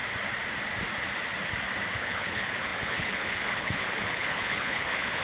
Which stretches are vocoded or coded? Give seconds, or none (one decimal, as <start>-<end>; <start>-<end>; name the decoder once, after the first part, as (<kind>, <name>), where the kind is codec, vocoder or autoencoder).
1.9-5.2 (codec, HILCodec)